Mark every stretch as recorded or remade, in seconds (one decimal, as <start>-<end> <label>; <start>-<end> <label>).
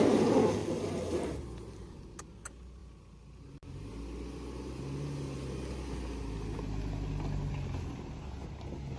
0.0-0.6 recorded; 0.6-2.0 remade; 2.0-9.0 recorded